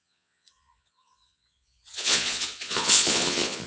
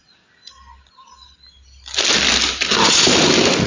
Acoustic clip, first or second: second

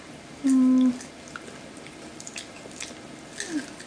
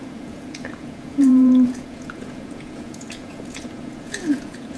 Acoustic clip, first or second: first